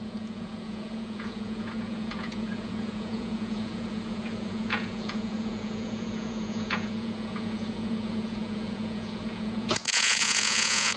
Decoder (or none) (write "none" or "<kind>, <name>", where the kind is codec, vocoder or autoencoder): vocoder, Vocos